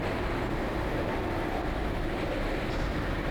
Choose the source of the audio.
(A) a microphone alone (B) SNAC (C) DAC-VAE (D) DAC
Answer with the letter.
A